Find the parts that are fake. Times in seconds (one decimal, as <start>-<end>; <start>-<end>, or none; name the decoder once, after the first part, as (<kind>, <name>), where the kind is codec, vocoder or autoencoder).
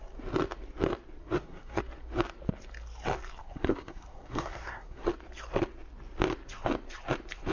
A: 1.2-1.8 (codec, SNAC); 3.4-5.1